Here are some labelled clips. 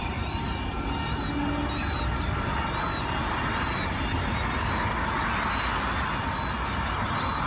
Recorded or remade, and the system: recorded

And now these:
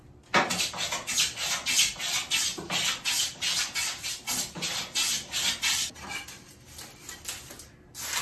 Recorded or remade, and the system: recorded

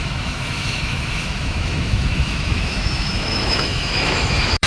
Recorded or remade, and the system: remade, autoencoder, DAC-VAE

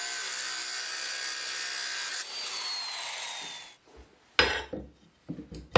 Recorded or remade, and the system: recorded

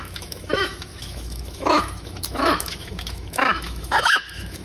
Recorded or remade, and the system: remade, autoencoder, DAC-VAE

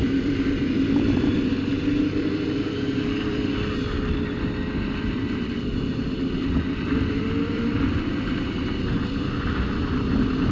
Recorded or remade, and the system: remade, vocoder, BigVGAN v2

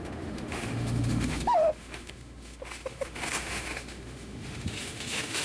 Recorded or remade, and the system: remade, autoencoder, DAC-VAE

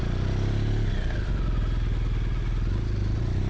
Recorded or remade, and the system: recorded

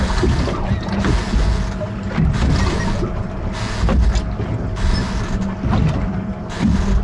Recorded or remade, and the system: recorded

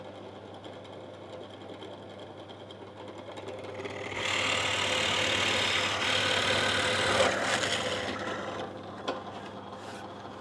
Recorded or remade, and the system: recorded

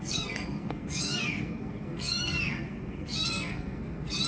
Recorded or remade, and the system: remade, codec, SNAC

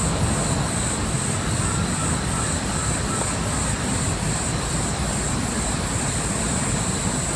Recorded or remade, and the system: recorded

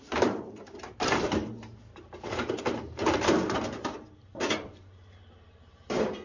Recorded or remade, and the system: remade, vocoder, BigVGAN v2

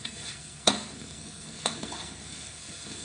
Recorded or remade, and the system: remade, codec, SNAC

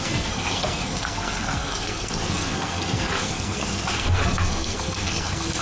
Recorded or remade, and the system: remade, codec, SNAC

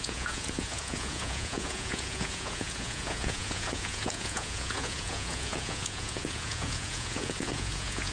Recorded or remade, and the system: remade, vocoder, Vocos